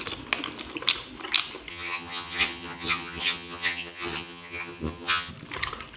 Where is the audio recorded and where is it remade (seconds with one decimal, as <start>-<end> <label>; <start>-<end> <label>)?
0.0-1.7 recorded; 1.7-5.3 remade; 5.3-6.0 recorded

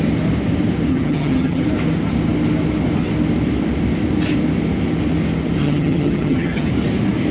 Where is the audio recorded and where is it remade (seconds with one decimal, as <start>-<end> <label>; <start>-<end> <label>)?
0.0-0.9 recorded; 0.9-1.6 remade; 1.6-5.6 recorded; 5.6-6.7 remade; 6.7-7.3 recorded

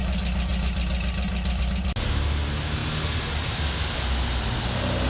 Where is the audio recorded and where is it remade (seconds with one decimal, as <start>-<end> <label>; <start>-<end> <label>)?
0.0-5.1 recorded

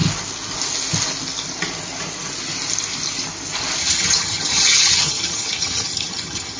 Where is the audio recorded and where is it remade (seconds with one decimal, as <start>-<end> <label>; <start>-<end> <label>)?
0.0-3.8 recorded; 3.8-6.6 remade

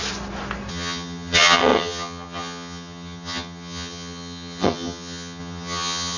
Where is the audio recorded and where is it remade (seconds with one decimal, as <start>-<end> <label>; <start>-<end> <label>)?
0.0-0.7 recorded; 0.7-6.2 remade

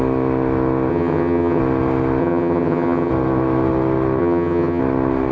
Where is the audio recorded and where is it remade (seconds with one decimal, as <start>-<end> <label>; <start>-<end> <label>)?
0.0-0.9 recorded; 0.9-1.6 remade; 1.6-2.2 recorded; 2.2-3.1 remade; 3.1-4.2 recorded; 4.2-4.8 remade; 4.8-5.3 recorded

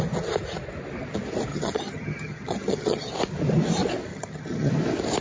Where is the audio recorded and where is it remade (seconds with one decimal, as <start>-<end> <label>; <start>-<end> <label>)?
0.0-1.5 recorded; 1.5-3.1 remade; 3.1-4.1 recorded; 4.1-4.7 remade; 4.7-5.2 recorded